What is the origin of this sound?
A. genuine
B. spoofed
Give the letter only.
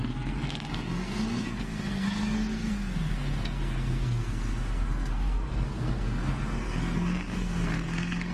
B